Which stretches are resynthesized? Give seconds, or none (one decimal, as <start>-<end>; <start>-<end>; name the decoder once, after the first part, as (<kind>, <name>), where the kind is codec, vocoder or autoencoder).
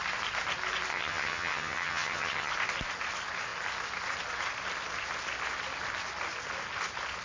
0.9-2.5 (vocoder, HiFi-GAN)